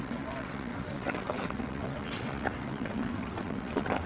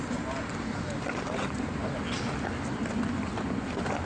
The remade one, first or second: first